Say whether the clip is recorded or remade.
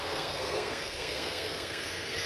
remade